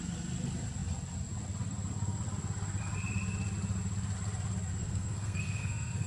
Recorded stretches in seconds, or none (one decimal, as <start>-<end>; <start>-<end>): 0.0-4.8